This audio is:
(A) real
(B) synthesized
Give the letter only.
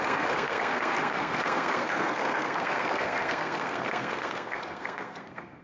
B